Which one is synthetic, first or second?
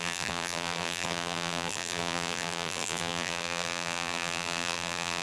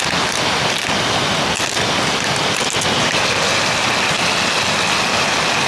first